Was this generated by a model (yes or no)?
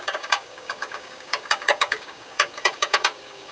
yes